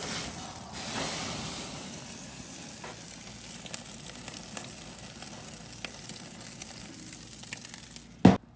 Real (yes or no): yes